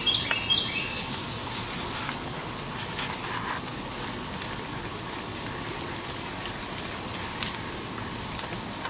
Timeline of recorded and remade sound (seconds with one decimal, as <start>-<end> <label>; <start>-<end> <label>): 0.0-8.9 recorded